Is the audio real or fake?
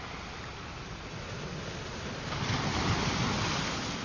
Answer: real